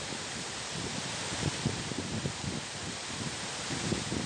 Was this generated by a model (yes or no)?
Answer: no